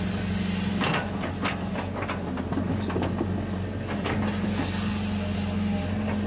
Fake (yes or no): no